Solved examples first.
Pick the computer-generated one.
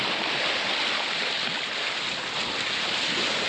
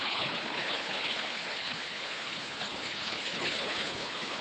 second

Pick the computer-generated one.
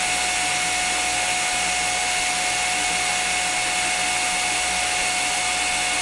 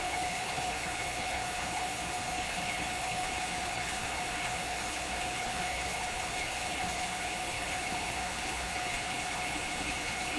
second